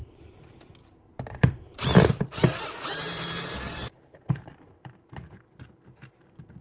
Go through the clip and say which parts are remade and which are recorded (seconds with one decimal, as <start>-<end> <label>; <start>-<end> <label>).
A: 0.0-0.8 recorded; 0.8-4.8 remade; 4.8-6.6 recorded